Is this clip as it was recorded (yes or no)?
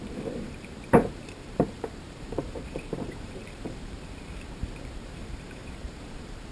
no